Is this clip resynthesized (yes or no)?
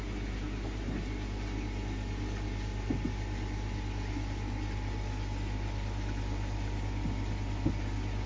no